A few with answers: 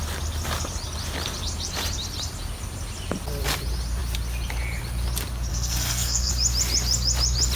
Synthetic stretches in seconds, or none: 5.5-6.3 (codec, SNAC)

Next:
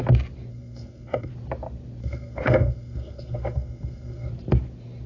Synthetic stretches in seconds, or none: 0.5-1.3 (codec, SNAC); 2.0-4.3

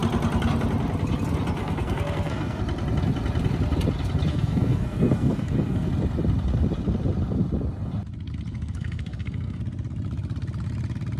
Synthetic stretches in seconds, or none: 1.6-2.6 (codec, SNAC); 4.3-5.9; 8.5-9.6

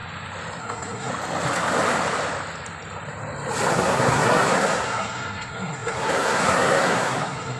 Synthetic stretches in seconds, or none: 0.6-1.1 (codec, SNAC); 3.7-7.6